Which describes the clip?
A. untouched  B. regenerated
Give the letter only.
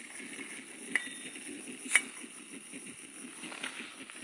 A